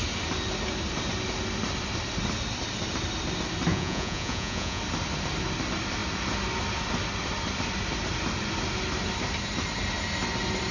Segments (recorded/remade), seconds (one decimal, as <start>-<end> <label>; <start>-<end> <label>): 0.0-3.7 recorded; 3.7-4.8 remade; 4.8-10.7 recorded